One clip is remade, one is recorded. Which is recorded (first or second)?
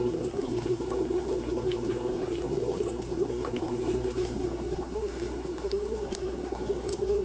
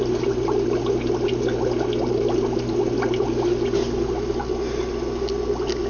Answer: second